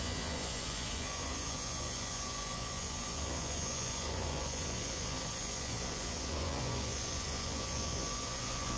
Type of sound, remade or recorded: remade